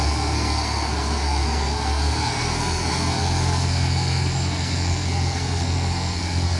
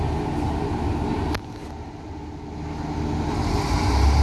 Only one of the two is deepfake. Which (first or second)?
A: first